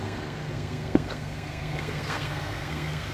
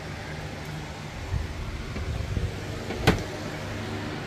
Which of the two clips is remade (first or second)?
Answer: first